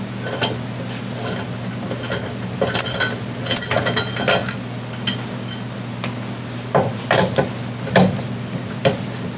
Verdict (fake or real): real